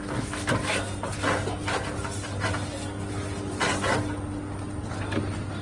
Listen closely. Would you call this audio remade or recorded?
recorded